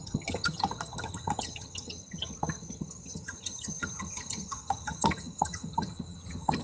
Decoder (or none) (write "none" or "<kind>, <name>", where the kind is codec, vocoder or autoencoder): vocoder, HiFi-GAN